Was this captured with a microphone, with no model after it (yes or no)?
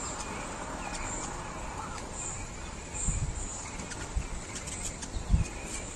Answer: yes